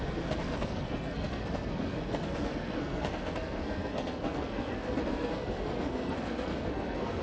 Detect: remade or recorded remade